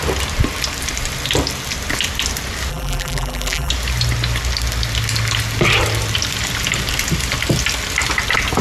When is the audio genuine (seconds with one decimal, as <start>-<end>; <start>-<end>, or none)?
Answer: 0.0-2.7; 3.7-8.6